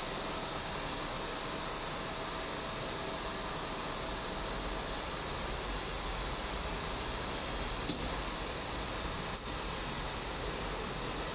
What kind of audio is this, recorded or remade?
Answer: recorded